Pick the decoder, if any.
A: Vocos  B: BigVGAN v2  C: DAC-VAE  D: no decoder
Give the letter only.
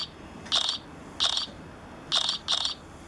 D